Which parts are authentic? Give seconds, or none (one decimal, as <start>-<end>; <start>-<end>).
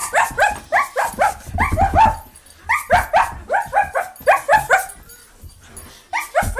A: 4.0-6.6